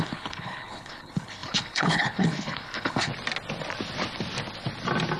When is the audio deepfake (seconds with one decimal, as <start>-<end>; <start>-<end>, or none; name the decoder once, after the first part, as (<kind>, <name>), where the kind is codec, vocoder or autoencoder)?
0.0-3.1 (codec, HILCodec)